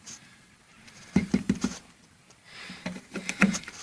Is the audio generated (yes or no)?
yes